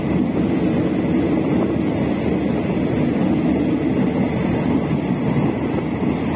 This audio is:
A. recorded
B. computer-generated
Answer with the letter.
A